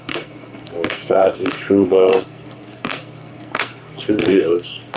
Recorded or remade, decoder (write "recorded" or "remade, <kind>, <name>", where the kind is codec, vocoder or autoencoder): remade, codec, SNAC